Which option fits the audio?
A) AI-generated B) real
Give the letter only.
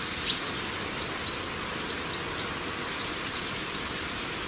B